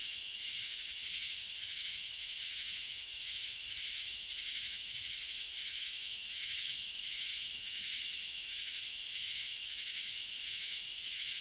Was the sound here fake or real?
fake